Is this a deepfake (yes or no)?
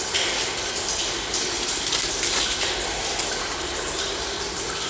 no